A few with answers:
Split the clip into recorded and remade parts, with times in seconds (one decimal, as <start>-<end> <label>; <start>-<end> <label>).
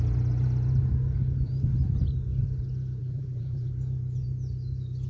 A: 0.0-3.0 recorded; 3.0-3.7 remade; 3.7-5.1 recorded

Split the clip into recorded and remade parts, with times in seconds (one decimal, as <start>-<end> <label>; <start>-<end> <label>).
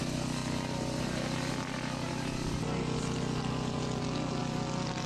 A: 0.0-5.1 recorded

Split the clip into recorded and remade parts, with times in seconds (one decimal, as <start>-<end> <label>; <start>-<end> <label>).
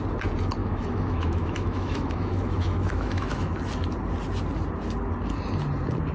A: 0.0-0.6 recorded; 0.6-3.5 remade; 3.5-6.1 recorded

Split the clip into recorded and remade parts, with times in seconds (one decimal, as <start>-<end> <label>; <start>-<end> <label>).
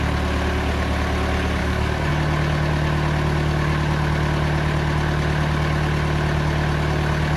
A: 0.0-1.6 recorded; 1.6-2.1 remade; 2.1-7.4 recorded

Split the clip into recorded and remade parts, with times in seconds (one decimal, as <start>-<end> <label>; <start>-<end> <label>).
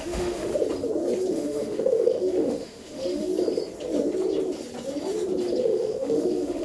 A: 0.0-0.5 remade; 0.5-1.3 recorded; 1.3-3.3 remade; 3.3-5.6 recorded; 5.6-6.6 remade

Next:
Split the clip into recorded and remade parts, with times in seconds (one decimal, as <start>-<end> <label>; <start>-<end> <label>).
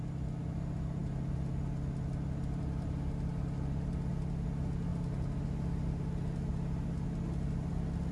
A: 0.0-8.1 recorded